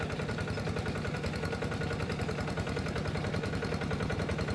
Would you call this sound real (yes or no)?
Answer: yes